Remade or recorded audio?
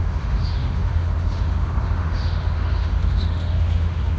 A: remade